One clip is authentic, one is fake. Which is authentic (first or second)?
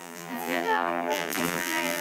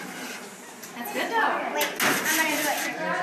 second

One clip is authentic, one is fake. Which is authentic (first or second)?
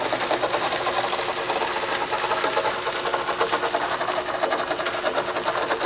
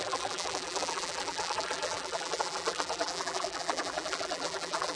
first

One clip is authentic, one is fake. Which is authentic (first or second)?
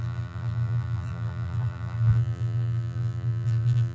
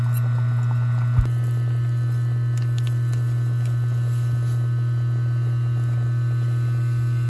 second